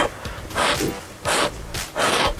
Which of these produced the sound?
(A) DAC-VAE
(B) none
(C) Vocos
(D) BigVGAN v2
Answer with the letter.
B